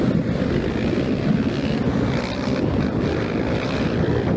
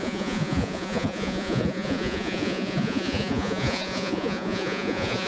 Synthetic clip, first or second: second